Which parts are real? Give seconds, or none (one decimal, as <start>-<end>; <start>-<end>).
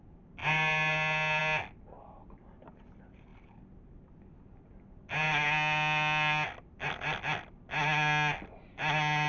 0.0-9.3